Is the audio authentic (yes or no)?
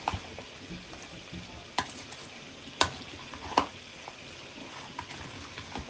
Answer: yes